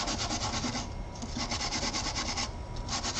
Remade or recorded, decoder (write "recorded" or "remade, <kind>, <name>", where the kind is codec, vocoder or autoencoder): recorded